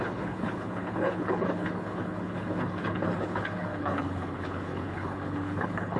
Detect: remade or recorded remade